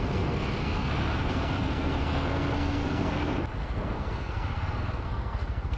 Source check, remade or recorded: remade